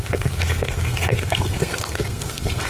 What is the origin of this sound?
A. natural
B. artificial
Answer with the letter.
B